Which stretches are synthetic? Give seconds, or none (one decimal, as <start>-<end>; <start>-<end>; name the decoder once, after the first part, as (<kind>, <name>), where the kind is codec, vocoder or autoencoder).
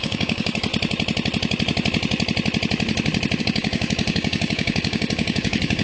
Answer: 0.0-0.7 (codec, DAC); 3.4-5.8